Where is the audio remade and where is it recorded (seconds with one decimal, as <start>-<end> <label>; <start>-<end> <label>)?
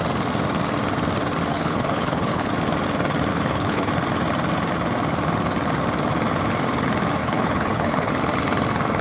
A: 0.0-1.5 recorded; 1.5-2.5 remade; 2.5-3.3 recorded; 3.3-3.9 remade; 3.9-7.2 recorded; 7.2-8.1 remade; 8.1-9.0 recorded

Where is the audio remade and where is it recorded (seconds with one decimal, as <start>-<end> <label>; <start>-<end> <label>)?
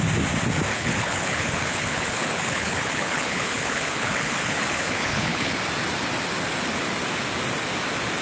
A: 0.0-0.7 recorded; 0.7-5.6 remade; 5.6-8.2 recorded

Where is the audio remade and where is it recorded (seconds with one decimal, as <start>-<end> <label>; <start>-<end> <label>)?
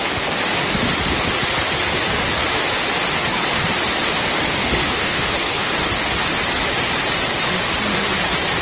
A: 0.0-4.6 recorded; 4.6-5.7 remade; 5.7-8.6 recorded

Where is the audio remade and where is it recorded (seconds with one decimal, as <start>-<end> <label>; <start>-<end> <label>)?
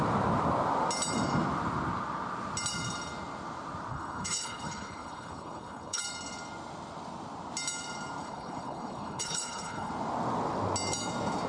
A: 0.0-3.9 recorded; 3.9-6.0 remade; 6.0-8.2 recorded; 8.2-9.9 remade; 9.9-11.5 recorded